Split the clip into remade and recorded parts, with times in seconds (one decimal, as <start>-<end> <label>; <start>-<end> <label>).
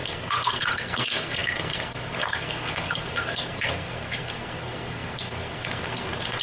0.0-6.4 remade